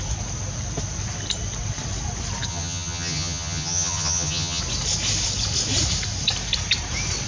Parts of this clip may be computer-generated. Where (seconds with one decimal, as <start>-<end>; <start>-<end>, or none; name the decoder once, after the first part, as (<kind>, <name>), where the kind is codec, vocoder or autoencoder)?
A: 2.5-4.6 (vocoder, HiFi-GAN)